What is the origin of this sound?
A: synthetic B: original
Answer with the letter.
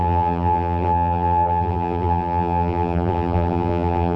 A